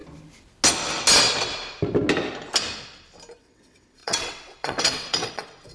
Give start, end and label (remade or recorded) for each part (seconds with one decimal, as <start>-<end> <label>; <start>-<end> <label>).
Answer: 0.0-3.4 recorded; 3.4-5.7 remade